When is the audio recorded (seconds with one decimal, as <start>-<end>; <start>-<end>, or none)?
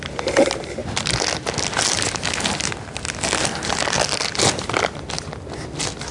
0.0-6.1